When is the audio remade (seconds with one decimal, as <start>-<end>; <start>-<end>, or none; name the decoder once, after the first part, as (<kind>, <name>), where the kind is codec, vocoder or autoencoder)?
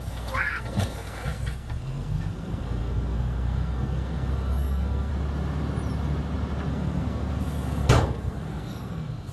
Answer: 0.0-5.1 (codec, SNAC); 6.7-9.3